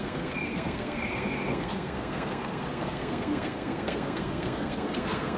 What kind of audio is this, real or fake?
fake